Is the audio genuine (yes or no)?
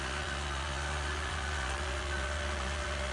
no